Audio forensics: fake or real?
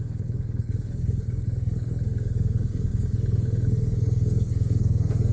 fake